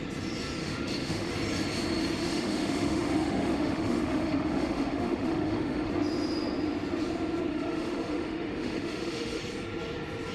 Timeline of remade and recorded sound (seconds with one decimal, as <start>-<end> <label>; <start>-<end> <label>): 0.0-0.6 recorded; 0.6-1.3 remade; 1.3-2.2 recorded; 2.2-5.9 remade; 5.9-7.5 recorded; 7.5-9.4 remade; 9.4-10.3 recorded

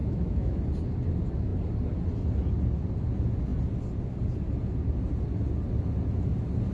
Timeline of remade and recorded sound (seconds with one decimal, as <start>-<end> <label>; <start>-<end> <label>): 0.0-0.6 remade; 0.6-6.7 recorded

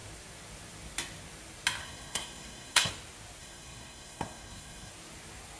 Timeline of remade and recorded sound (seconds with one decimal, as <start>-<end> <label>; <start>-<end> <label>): 0.0-1.8 recorded; 1.8-2.9 remade; 2.9-3.4 recorded; 3.4-4.9 remade; 4.9-5.6 recorded

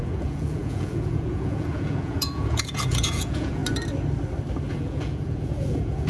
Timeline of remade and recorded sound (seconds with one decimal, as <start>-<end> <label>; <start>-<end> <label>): 0.0-3.6 remade; 3.6-4.7 recorded; 4.7-6.1 remade

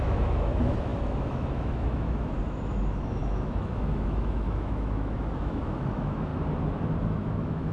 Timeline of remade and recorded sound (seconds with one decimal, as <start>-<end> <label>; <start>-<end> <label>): 0.0-6.3 remade; 6.3-7.0 recorded; 7.0-7.7 remade

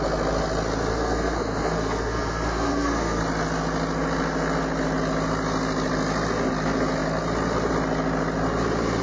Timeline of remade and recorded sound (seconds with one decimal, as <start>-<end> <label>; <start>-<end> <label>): 0.0-0.9 recorded; 0.9-3.2 remade; 3.2-9.0 recorded

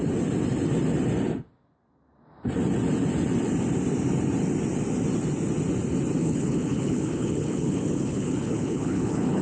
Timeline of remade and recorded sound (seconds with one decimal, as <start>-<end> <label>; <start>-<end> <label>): 0.0-6.2 recorded; 6.2-9.4 remade

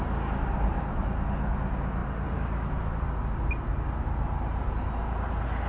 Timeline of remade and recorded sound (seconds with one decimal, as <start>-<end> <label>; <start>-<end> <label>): 0.0-5.7 recorded